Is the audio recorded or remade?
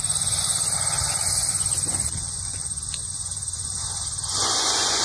remade